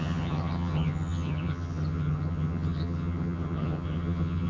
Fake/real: fake